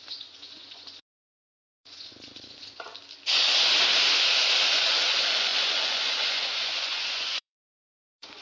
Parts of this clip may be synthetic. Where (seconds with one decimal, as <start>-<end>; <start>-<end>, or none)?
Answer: 0.0-2.9; 4.7-8.4